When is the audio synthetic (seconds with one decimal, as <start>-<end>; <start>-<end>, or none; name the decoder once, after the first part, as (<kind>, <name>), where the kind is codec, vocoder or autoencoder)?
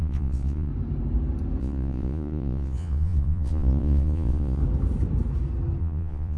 0.0-0.7 (vocoder, Vocos); 1.6-4.6; 5.8-6.4